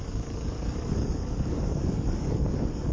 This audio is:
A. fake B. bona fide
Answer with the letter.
A